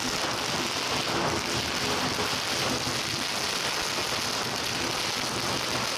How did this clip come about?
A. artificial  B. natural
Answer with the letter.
B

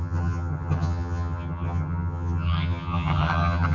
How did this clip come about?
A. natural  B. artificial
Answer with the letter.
B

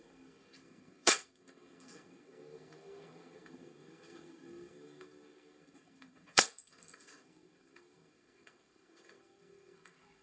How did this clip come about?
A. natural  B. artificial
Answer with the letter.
B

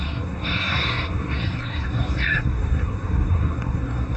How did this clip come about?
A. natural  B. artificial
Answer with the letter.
B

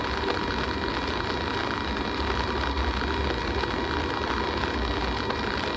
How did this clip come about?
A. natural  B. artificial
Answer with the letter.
A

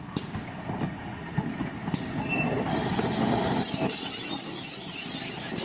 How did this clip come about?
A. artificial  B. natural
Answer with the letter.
B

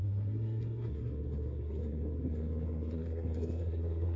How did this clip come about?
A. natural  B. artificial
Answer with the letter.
B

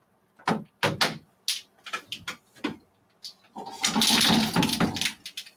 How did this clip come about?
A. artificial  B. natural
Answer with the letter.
B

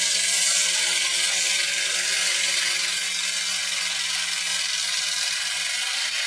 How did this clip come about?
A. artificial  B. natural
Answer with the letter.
B